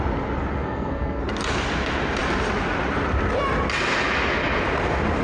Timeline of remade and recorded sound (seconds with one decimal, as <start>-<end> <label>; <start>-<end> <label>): 0.0-0.5 recorded; 0.5-1.2 remade; 1.2-5.2 recorded